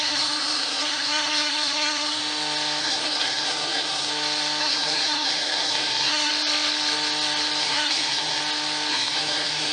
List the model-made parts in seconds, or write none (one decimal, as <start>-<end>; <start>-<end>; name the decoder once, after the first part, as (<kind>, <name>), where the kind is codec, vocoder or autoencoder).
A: 0.0-2.2 (codec, SNAC); 2.8-4.1; 4.6-6.3; 7.6-8.4; 8.9-9.7